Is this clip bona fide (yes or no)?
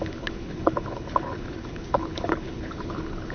no